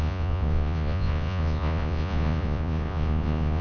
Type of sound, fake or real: fake